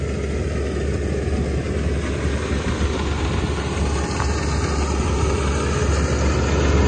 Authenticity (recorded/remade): recorded